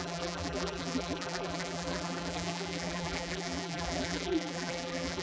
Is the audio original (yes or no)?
no